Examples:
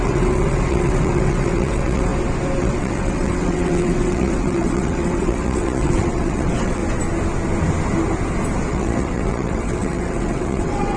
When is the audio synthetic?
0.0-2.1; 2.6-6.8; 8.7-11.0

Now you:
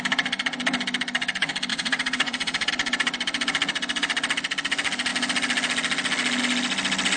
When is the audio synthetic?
1.7-2.7